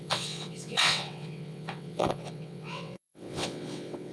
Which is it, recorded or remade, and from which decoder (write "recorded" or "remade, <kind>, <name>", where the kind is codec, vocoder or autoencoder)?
remade, vocoder, WaveNeXt